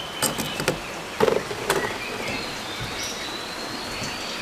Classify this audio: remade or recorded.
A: recorded